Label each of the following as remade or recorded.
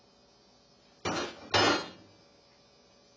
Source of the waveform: recorded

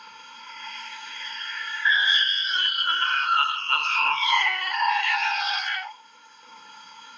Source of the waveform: remade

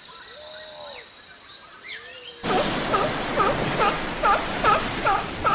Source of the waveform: recorded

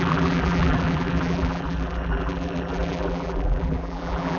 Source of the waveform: remade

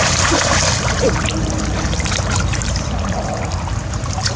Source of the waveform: remade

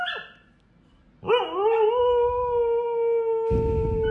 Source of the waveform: recorded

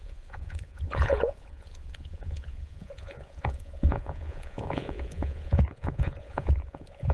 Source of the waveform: remade